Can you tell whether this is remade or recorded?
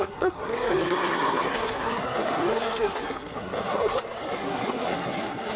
remade